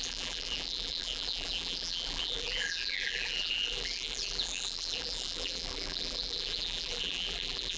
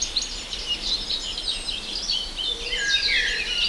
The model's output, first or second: first